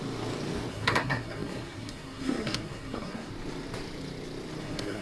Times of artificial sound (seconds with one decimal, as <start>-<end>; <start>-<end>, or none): 0.7-3.3; 4.6-5.0